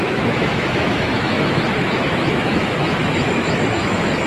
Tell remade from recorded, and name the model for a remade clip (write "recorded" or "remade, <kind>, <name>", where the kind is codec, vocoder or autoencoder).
remade, autoencoder, DAC-VAE